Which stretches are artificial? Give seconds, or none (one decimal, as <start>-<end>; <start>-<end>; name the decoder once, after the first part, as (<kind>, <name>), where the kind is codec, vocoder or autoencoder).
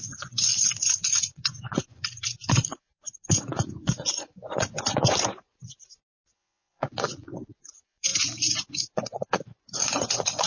0.0-10.5 (vocoder, Vocos)